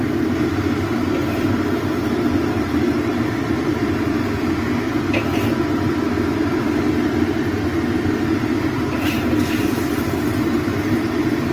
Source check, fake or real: fake